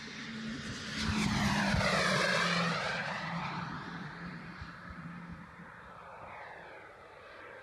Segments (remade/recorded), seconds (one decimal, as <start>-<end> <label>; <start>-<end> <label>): 0.0-0.9 remade; 0.9-1.5 recorded; 1.5-6.1 remade; 6.1-6.7 recorded; 6.7-7.6 remade